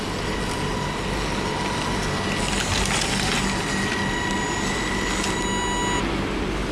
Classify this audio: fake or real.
real